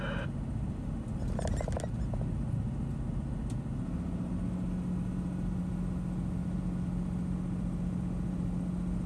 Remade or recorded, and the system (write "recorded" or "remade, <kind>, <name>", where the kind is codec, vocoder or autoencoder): recorded